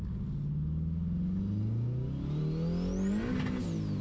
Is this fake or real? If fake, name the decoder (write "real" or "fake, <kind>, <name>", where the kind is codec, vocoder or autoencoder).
real